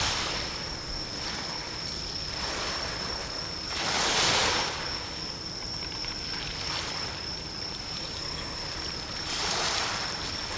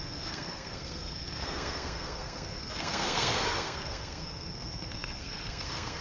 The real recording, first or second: first